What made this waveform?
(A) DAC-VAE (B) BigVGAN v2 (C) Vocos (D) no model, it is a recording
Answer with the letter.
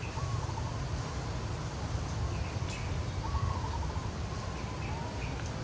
D